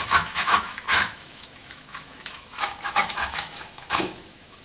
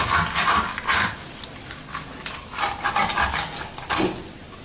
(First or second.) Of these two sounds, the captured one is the second